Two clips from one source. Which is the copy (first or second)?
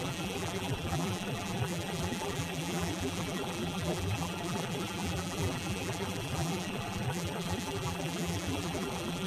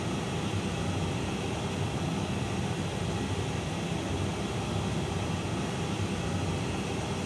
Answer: first